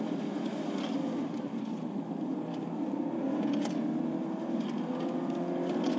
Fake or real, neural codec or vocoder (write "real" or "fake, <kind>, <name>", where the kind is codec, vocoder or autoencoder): real